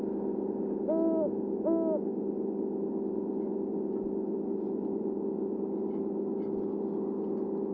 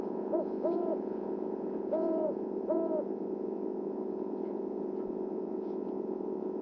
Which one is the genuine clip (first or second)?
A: first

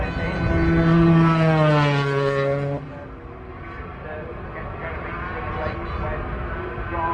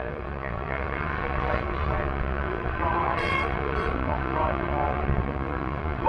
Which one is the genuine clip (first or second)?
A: first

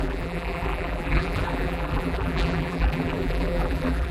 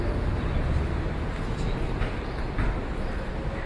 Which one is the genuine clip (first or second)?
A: second